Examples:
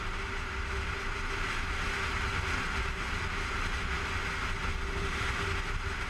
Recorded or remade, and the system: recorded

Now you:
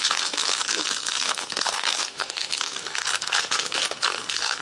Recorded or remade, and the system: remade, codec, SNAC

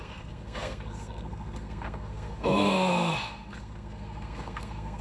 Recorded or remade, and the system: remade, codec, SNAC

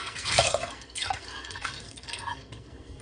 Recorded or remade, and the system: remade, codec, SNAC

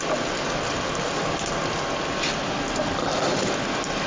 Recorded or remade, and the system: recorded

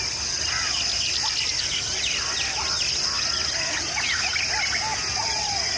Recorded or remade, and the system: recorded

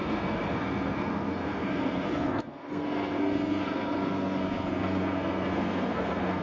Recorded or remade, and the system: remade, codec, SNAC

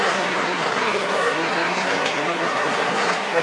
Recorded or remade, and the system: remade, codec, SNAC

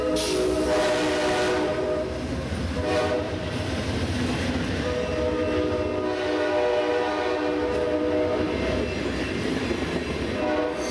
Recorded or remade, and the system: recorded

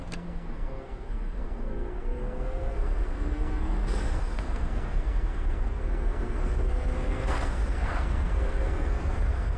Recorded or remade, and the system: remade, codec, SNAC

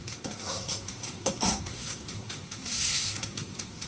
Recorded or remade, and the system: remade, codec, SNAC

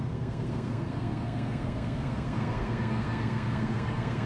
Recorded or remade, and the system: remade, codec, SNAC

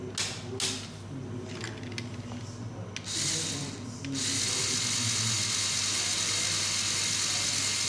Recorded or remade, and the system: recorded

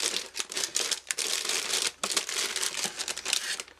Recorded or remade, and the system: recorded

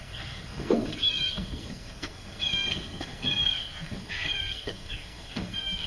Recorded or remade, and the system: remade, codec, SNAC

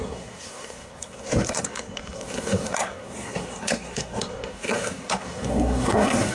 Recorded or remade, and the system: remade, codec, SNAC